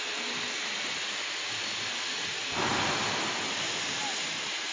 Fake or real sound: real